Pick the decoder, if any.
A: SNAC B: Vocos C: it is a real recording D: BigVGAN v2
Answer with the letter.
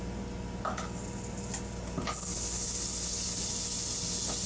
C